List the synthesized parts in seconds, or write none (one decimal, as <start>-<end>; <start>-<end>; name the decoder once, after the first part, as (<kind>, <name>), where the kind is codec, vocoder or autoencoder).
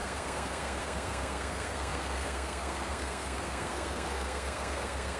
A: 0.0-5.2 (codec, SNAC)